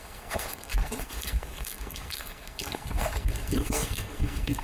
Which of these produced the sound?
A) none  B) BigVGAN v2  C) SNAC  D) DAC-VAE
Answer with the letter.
C